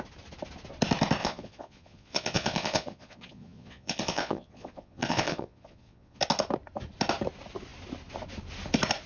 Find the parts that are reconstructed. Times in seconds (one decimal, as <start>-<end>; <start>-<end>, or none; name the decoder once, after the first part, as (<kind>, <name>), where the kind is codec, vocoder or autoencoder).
1.2-6.2 (vocoder, Vocos)